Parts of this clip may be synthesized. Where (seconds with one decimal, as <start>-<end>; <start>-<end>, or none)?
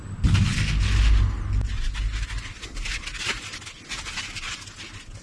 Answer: none